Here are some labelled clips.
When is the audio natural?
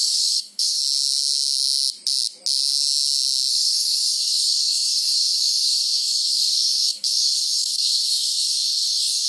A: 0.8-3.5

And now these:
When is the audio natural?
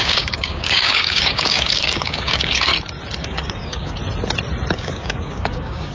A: 2.7-3.2; 4.0-4.7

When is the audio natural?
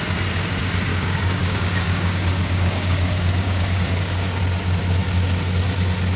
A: 0.0-0.9; 4.4-6.2